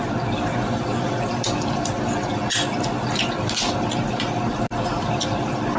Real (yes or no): yes